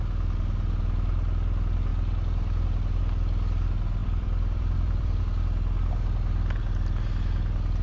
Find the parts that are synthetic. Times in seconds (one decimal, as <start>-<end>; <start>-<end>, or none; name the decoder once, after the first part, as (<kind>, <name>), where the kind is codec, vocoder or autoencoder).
4.0-5.2 (vocoder, BigVGAN v2)